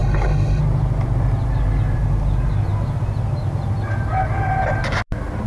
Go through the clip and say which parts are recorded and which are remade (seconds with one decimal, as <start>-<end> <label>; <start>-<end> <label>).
0.0-0.6 remade; 0.6-5.5 recorded